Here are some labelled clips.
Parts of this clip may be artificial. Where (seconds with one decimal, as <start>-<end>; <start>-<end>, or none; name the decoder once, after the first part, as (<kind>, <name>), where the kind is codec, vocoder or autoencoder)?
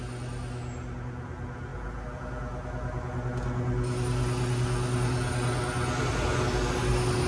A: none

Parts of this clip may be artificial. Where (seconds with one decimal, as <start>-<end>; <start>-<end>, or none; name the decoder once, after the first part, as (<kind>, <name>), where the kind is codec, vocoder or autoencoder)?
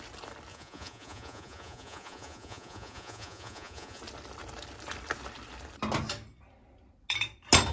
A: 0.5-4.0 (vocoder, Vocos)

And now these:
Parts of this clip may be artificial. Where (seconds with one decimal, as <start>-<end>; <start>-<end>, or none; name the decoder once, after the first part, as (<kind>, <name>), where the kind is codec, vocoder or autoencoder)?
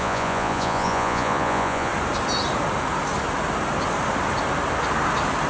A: 0.0-1.9 (vocoder, Vocos)